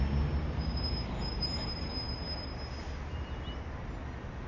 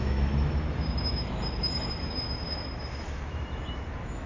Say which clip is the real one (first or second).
first